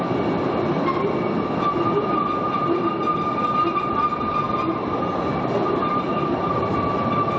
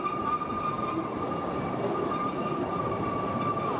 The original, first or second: first